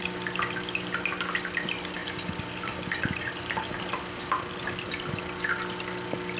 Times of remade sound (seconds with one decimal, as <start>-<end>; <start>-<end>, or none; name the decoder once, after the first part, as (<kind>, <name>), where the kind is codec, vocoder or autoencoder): 2.0-5.8 (vocoder, BigVGAN v2)